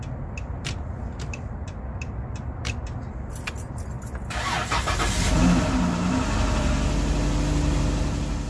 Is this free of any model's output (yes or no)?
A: yes